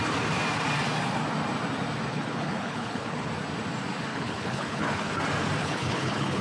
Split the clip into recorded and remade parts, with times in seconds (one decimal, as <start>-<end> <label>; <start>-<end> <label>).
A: 0.0-2.1 recorded; 2.1-3.3 remade; 3.3-4.1 recorded; 4.1-5.1 remade; 5.1-5.6 recorded; 5.6-6.4 remade